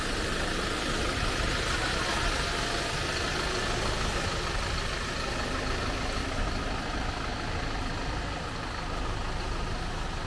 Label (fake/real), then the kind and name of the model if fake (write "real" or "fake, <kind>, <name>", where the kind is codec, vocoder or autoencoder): real